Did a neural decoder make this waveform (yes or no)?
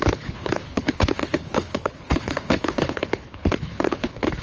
yes